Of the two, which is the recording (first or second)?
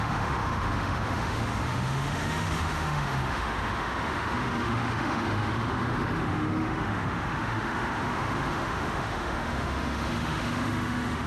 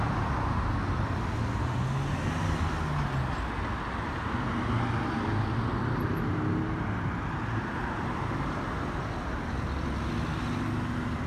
second